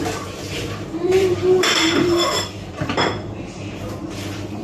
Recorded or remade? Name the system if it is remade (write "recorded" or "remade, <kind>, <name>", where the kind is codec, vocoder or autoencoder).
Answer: remade, vocoder, BigVGAN v2